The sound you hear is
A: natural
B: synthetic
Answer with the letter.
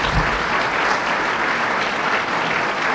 B